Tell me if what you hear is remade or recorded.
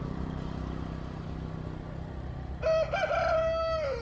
recorded